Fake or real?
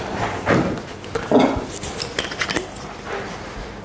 real